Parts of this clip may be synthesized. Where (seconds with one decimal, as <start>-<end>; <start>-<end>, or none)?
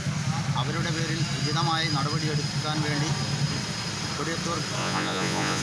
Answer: 4.8-5.6